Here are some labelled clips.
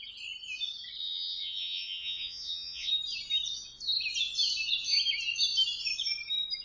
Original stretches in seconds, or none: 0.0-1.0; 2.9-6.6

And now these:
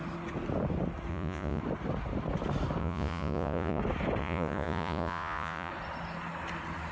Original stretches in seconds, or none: 0.0-1.1; 1.6-2.8; 3.8-4.2; 5.7-6.9

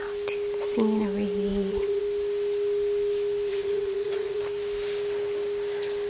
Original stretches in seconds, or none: 0.0-1.5; 2.0-3.5; 4.4-6.1

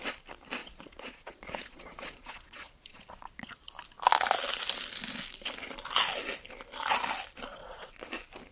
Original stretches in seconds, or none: 0.0-0.6; 3.7-7.5; 8.1-8.5

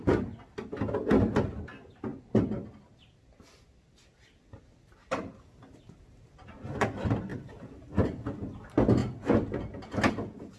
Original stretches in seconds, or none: 0.0-10.6